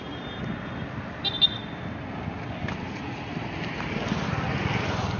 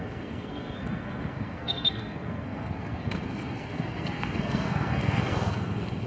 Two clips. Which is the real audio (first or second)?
first